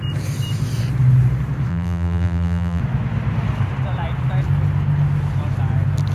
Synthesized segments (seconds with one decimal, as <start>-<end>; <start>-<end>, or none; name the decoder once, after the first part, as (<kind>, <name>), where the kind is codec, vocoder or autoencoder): 1.7-2.8 (vocoder, BigVGAN v2)